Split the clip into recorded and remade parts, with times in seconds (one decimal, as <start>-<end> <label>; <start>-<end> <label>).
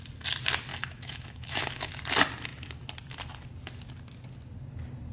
0.0-0.7 recorded; 0.7-1.9 remade; 1.9-5.1 recorded